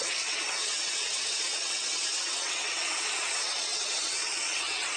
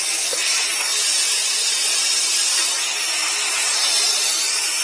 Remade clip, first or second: first